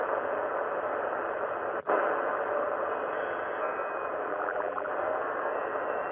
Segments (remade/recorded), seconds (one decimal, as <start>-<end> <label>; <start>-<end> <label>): 0.0-4.3 recorded; 4.3-4.9 remade; 4.9-6.1 recorded